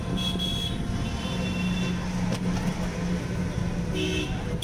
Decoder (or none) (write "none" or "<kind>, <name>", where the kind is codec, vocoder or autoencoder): none